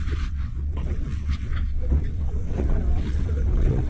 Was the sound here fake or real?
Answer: fake